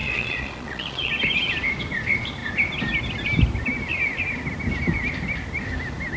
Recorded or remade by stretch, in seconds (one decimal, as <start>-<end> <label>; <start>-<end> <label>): 0.0-1.1 remade; 1.1-6.2 recorded